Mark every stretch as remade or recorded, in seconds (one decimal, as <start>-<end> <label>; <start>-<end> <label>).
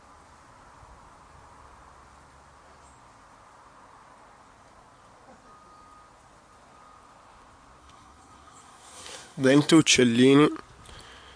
0.0-7.8 recorded; 7.8-9.8 remade; 9.8-11.4 recorded